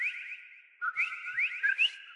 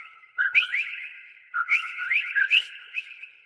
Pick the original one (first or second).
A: first